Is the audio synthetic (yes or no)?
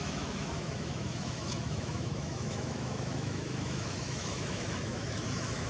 yes